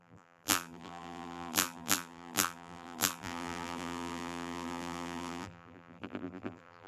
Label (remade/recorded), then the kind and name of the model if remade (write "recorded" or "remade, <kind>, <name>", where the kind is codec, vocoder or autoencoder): remade, vocoder, BigVGAN v2